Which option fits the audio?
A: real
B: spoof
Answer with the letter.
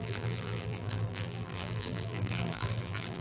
B